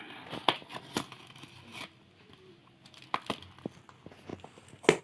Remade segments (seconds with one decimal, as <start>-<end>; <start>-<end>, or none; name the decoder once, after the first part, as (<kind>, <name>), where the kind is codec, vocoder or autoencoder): none